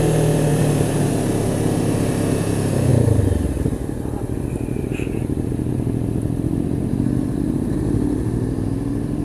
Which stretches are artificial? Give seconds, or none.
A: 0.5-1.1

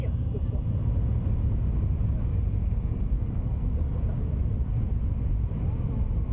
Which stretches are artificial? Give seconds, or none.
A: 2.6-3.8

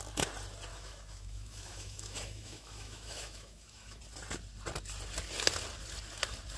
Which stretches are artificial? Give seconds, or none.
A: 0.7-4.0

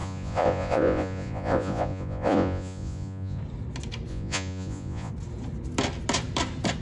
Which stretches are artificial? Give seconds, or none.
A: 0.0-3.4; 4.1-5.1

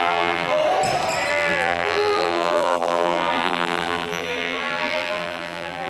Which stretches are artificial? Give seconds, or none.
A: 0.0-0.6; 1.3-5.9

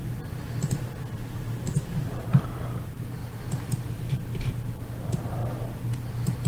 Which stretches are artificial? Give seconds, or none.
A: 1.5-3.2; 4.1-5.4; 5.9-6.5

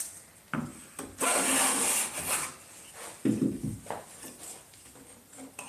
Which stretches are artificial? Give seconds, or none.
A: none